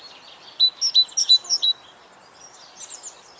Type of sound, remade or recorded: recorded